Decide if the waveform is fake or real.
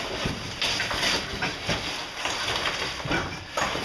real